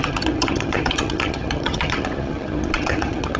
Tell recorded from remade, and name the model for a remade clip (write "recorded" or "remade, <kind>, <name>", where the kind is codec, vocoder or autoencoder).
remade, vocoder, HiFi-GAN